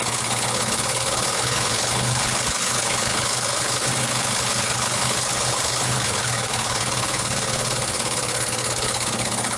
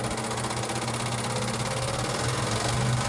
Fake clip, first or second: first